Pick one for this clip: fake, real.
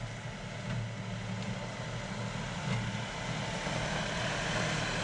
real